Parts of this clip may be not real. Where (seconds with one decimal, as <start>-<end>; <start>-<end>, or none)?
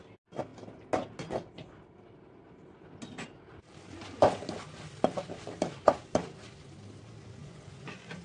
7.4-8.2